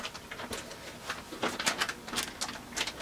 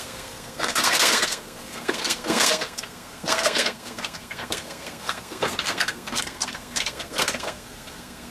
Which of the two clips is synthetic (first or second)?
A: second